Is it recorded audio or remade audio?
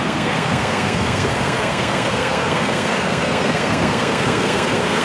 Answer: remade